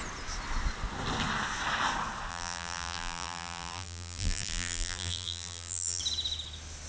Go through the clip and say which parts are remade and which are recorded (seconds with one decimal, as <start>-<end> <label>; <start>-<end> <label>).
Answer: 0.0-2.3 recorded; 2.3-6.0 remade; 6.0-6.9 recorded